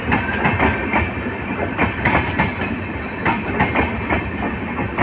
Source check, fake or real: real